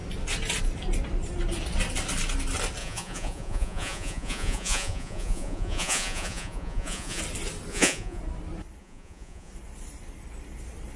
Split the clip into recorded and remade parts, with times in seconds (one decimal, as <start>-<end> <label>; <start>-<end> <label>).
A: 0.0-2.8 recorded; 2.8-7.2 remade; 7.2-7.7 recorded; 7.7-8.2 remade; 8.2-8.8 recorded; 8.8-9.5 remade; 9.5-11.0 recorded